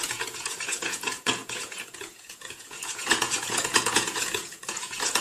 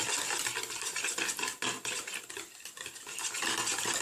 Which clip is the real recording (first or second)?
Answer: second